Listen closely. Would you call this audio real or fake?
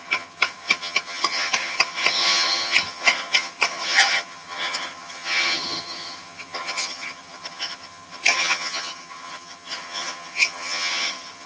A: fake